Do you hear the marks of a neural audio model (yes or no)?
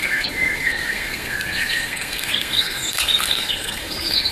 yes